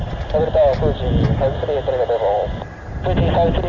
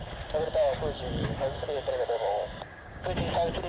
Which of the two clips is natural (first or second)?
first